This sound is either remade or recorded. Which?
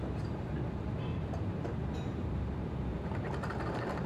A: remade